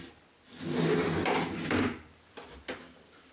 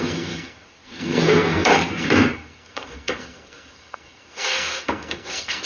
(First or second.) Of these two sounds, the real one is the first